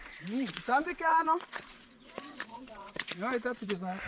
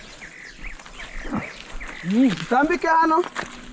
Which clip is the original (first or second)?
second